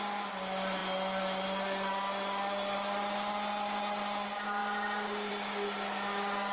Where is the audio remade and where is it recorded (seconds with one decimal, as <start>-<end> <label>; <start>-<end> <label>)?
0.0-6.5 recorded

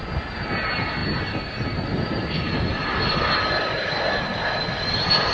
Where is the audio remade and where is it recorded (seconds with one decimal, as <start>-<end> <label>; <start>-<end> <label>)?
0.0-5.3 recorded

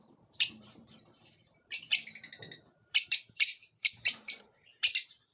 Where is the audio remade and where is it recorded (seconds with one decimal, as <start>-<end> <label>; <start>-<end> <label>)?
0.0-1.9 remade; 1.9-2.6 recorded; 2.6-5.3 remade

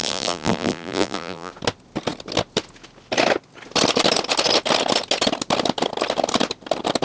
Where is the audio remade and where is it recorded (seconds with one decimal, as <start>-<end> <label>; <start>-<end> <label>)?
0.0-1.5 remade; 1.5-7.0 recorded

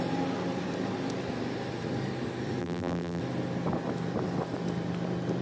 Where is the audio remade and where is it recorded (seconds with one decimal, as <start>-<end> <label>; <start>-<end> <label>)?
0.0-2.6 recorded; 2.6-3.2 remade; 3.2-5.4 recorded

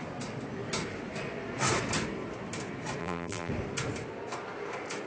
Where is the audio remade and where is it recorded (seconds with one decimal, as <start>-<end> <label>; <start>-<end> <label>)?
0.0-3.0 recorded; 3.0-3.5 remade; 3.5-5.1 recorded

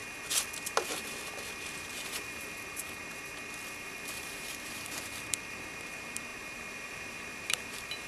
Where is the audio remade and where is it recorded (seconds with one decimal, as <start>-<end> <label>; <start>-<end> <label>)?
0.0-1.8 recorded; 1.8-3.0 remade; 3.0-3.8 recorded; 3.8-8.1 remade